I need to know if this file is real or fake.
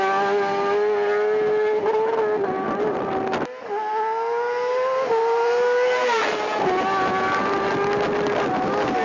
real